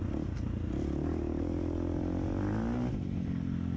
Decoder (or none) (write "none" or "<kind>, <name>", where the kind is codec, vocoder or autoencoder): none